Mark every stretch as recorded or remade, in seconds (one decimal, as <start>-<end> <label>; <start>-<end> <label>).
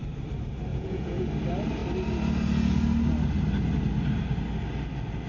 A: 0.0-0.7 recorded; 0.7-1.3 remade; 1.3-5.3 recorded